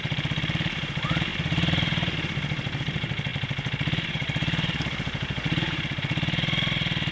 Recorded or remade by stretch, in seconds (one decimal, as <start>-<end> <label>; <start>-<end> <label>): 0.0-1.3 remade; 1.3-2.8 recorded; 2.8-7.1 remade